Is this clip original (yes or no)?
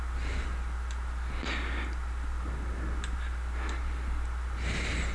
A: yes